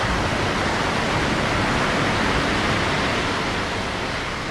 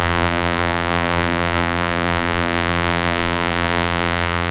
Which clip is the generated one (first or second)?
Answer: second